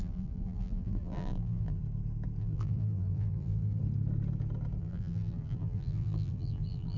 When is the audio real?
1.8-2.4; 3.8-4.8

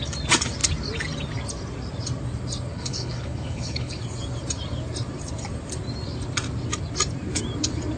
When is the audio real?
0.0-2.7; 4.0-8.0

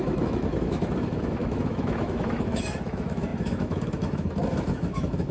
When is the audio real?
none

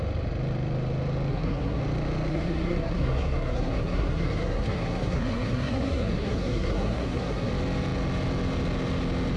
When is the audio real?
0.0-1.3; 1.8-2.3; 7.5-9.4

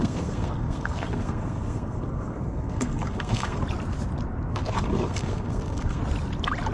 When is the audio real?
3.6-4.5; 6.0-6.7